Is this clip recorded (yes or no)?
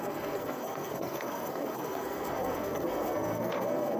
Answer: no